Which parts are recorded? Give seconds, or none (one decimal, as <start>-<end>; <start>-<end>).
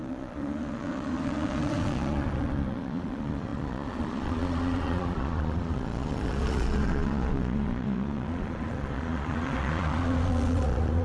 none